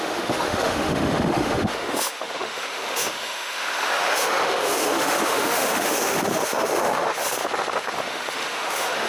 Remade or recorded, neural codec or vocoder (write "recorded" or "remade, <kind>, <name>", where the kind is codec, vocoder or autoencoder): remade, autoencoder, DAC-VAE